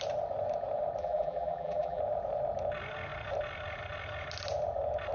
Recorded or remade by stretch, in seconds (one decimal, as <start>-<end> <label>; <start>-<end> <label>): 0.0-1.0 recorded; 1.0-2.0 remade; 2.0-5.1 recorded